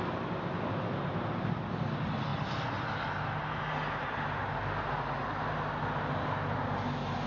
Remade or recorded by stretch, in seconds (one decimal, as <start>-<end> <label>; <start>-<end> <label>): 0.0-7.3 recorded